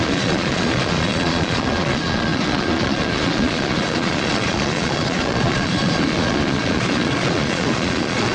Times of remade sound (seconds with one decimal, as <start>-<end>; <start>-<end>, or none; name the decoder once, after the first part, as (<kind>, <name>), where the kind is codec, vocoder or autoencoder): 0.0-8.3 (vocoder, Vocos)